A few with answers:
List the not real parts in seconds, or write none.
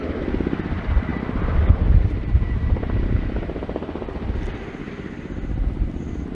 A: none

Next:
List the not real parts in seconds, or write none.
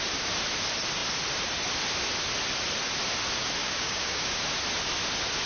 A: 3.6-4.4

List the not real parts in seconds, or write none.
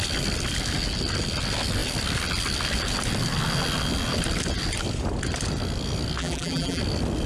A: 6.2-6.8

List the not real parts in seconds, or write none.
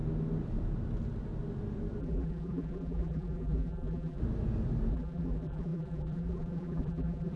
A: 2.0-4.2; 4.9-7.4